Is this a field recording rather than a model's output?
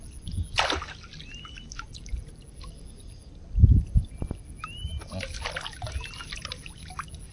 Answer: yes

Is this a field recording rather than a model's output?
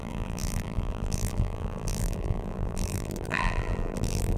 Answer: no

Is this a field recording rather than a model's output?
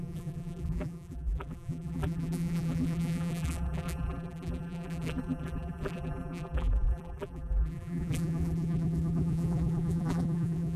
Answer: no